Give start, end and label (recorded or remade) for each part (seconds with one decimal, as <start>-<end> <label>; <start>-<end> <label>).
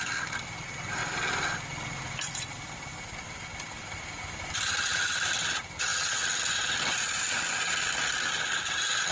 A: 0.0-5.9 remade; 5.9-9.1 recorded